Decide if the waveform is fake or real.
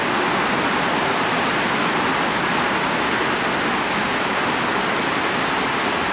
real